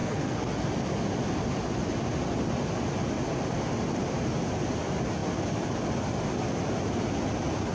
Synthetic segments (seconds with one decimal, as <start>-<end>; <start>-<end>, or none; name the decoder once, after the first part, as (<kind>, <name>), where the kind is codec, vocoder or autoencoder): 0.0-0.5 (codec, SNAC)